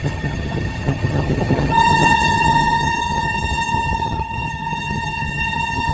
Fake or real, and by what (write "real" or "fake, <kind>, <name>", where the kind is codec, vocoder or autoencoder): fake, vocoder, HiFi-GAN